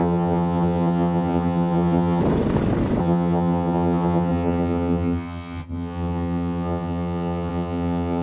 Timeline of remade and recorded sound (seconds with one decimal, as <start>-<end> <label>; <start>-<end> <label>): 0.0-2.2 remade; 2.2-3.0 recorded; 3.0-8.2 remade